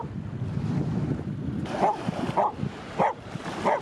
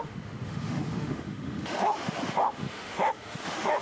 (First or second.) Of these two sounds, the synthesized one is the second